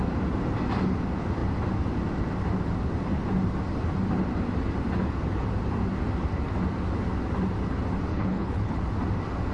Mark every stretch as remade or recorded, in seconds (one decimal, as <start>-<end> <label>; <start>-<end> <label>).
0.0-8.1 recorded; 8.1-8.8 remade; 8.8-9.5 recorded